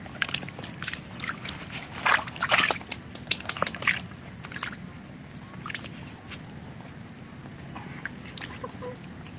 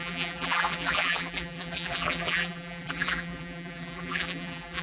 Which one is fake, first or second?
second